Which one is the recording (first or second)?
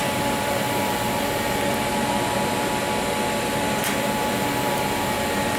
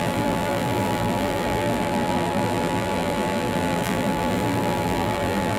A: first